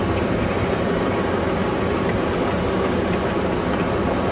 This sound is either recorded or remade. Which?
recorded